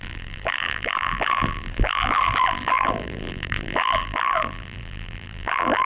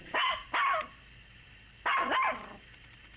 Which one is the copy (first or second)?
first